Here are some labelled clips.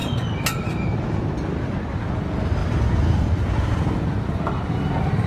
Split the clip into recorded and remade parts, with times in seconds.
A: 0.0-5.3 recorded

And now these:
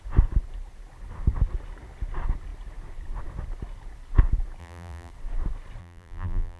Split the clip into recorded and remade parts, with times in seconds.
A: 0.0-4.6 recorded; 4.6-5.1 remade; 5.1-5.8 recorded; 5.8-6.6 remade

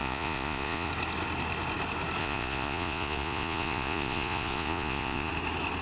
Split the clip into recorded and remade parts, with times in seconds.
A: 0.0-0.9 remade; 0.9-2.2 recorded; 2.2-5.3 remade; 5.3-5.8 recorded

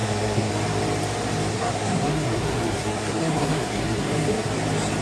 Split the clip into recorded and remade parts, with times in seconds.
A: 0.0-0.5 remade; 0.5-1.5 recorded; 1.5-4.5 remade; 4.5-5.0 recorded

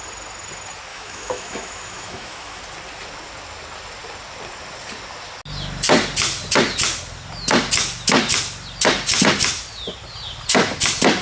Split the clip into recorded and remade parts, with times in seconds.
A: 0.0-0.9 recorded; 0.9-2.6 remade; 2.6-11.2 recorded

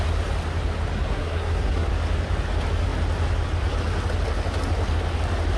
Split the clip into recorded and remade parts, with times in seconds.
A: 0.0-1.1 recorded; 1.1-1.9 remade; 1.9-5.6 recorded

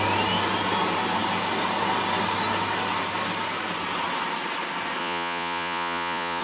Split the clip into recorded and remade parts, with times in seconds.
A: 0.0-5.0 recorded; 5.0-6.4 remade

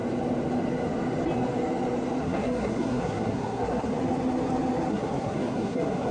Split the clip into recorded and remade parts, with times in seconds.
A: 0.0-2.2 recorded; 2.2-3.9 remade; 3.9-4.9 recorded; 4.9-6.1 remade